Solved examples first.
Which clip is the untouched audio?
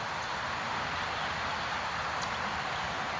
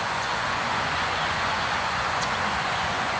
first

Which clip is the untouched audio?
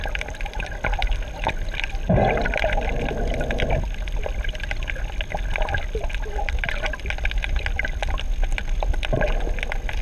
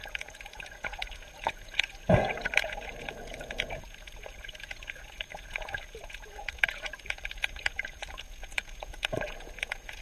first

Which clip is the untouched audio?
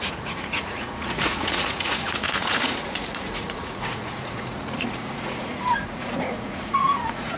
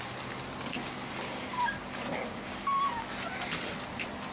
second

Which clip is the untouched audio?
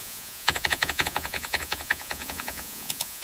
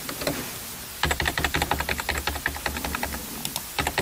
second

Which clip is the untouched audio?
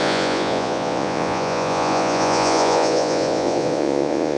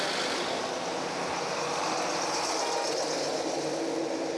second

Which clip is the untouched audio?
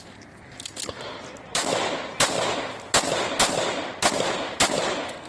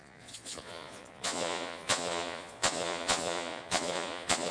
first